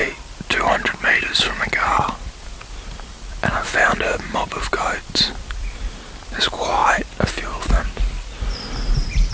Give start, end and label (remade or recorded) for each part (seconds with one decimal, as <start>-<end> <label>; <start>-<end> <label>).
0.0-2.2 recorded; 2.2-6.8 remade; 6.8-7.4 recorded; 7.4-9.3 remade